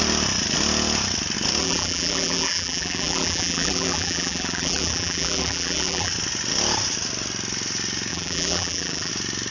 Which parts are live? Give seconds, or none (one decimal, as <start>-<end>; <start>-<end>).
0.0-1.6; 6.1-8.1; 9.1-9.5